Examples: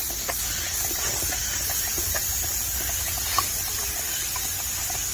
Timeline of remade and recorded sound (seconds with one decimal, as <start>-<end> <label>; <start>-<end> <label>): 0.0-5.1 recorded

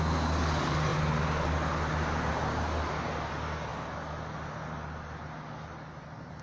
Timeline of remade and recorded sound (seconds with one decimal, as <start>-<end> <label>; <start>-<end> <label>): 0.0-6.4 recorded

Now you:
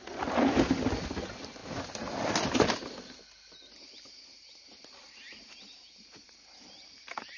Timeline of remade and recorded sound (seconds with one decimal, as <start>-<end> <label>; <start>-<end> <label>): 0.0-7.4 recorded

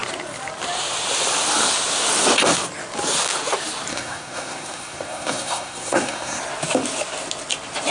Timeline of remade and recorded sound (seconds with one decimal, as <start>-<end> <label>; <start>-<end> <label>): 0.0-3.9 recorded; 3.9-6.4 remade; 6.4-7.9 recorded

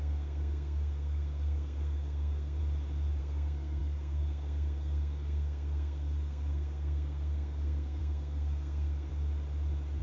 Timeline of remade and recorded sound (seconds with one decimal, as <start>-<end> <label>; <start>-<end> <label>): 0.0-2.6 remade; 2.6-3.2 recorded; 3.2-9.1 remade; 9.1-10.0 recorded